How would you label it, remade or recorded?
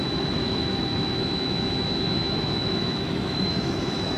remade